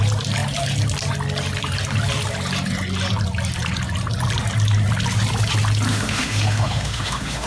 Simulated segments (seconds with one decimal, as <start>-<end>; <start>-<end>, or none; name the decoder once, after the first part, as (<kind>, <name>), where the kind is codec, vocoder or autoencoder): 5.9-7.5 (autoencoder, DAC-VAE)